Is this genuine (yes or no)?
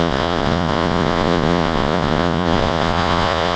no